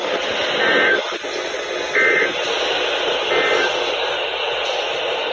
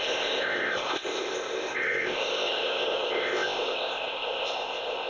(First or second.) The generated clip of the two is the second